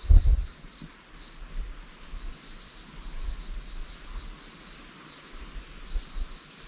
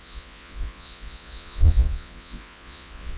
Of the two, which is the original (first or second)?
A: first